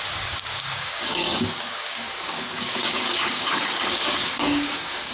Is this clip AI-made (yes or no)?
yes